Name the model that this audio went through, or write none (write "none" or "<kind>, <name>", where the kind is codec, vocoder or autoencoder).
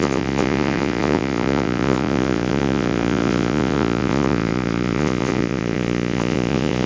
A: vocoder, Vocos